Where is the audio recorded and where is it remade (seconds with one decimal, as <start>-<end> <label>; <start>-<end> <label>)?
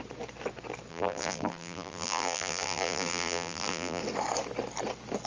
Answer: 0.0-0.9 recorded; 0.9-4.0 remade; 4.0-5.3 recorded